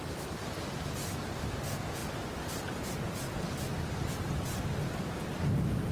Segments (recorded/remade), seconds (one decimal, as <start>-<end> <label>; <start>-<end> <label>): 0.0-5.9 remade